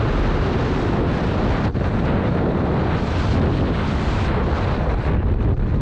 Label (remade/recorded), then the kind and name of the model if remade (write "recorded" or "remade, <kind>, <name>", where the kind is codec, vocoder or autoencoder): recorded